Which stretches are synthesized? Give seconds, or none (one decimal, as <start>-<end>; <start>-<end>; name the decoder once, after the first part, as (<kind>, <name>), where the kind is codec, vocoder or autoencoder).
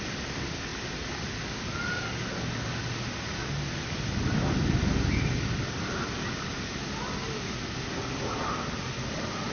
none